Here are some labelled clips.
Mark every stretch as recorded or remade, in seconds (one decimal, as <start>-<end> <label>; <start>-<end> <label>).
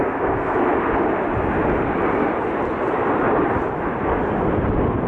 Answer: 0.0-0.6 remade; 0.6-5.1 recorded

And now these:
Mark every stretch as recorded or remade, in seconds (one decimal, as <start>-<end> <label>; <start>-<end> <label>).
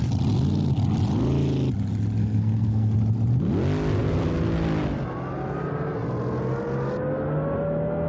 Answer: 0.0-2.2 recorded; 2.2-2.9 remade; 2.9-8.1 recorded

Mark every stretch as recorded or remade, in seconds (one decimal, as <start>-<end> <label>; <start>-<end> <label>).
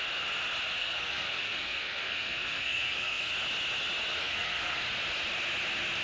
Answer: 0.0-0.8 recorded; 0.8-3.3 remade; 3.3-4.2 recorded; 4.2-4.8 remade; 4.8-6.0 recorded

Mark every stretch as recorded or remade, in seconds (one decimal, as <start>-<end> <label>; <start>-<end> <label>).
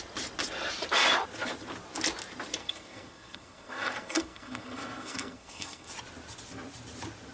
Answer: 0.0-2.6 recorded; 2.6-5.9 remade; 5.9-7.3 recorded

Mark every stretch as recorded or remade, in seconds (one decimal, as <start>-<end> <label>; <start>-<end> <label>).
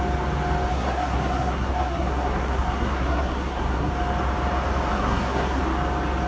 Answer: 0.0-0.7 recorded; 0.7-3.9 remade; 3.9-4.9 recorded; 4.9-5.6 remade; 5.6-6.3 recorded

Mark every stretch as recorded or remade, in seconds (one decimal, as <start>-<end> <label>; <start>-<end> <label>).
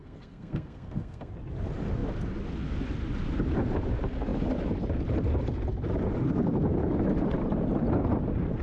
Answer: 0.0-1.3 remade; 1.3-8.6 recorded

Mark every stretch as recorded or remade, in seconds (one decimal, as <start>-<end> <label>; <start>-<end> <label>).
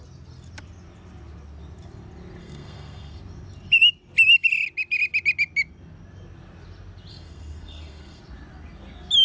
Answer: 0.0-2.4 recorded; 2.4-3.2 remade; 3.2-7.1 recorded; 7.1-8.2 remade; 8.2-9.2 recorded